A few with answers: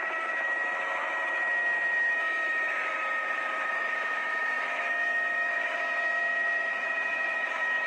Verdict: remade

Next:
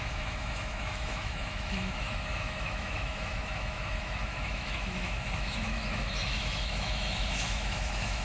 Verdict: remade